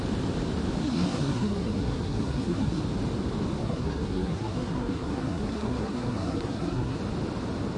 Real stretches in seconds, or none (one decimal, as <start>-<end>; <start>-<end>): 0.0-0.8; 2.8-3.6; 7.0-7.8